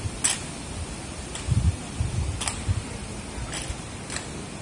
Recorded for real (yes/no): yes